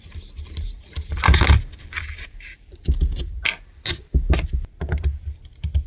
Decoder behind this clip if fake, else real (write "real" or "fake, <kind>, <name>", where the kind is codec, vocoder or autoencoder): real